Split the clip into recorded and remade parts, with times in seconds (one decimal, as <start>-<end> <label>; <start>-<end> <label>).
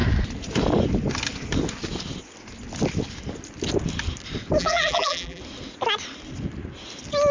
0.0-4.6 recorded; 4.6-5.4 remade; 5.4-7.3 recorded